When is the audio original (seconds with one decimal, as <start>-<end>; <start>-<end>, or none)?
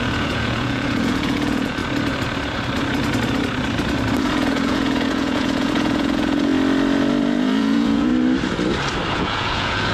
1.8-4.2; 6.5-7.2; 8.1-9.1